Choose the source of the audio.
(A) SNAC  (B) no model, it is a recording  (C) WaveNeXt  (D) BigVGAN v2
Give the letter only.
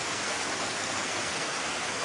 A